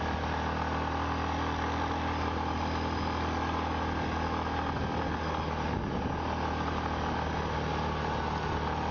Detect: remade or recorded recorded